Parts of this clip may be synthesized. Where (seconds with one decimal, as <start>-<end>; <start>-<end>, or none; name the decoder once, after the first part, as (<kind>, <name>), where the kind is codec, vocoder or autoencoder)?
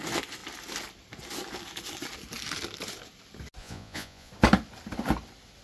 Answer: 3.6-4.3 (vocoder, Vocos)